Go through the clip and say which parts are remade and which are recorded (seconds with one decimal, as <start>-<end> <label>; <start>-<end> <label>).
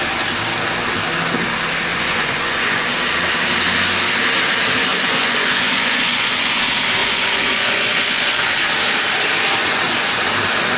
0.0-1.9 recorded; 1.9-2.9 remade; 2.9-4.9 recorded; 4.9-6.6 remade; 6.6-7.0 recorded; 7.0-8.5 remade; 8.5-9.6 recorded; 9.6-10.2 remade; 10.2-10.8 recorded